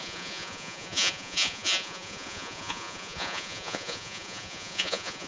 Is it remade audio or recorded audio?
remade